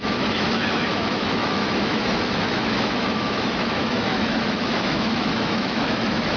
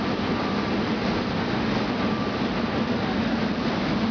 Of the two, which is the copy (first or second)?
first